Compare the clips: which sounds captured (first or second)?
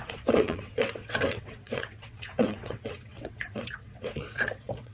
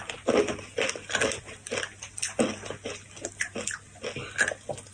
second